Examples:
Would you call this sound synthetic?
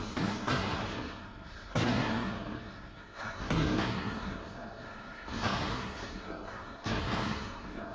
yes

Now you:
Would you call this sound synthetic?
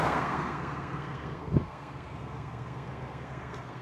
yes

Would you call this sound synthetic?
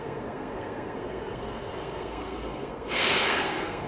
yes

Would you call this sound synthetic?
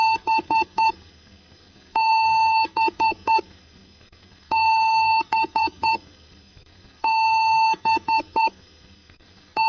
yes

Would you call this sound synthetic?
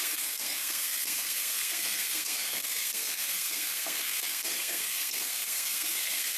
yes